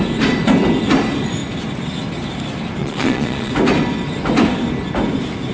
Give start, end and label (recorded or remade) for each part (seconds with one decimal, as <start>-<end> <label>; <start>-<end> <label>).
0.0-2.8 recorded; 2.8-3.5 remade; 3.5-5.5 recorded